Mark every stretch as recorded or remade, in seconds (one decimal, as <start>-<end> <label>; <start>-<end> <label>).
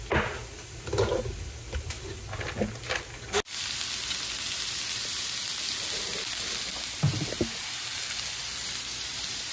0.0-9.5 recorded